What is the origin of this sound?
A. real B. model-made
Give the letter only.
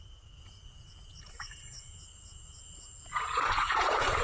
B